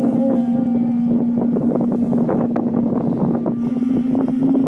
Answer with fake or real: real